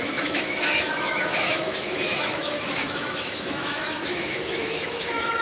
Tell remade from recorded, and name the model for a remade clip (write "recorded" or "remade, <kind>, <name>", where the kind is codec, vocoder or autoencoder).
remade, autoencoder, DAC-VAE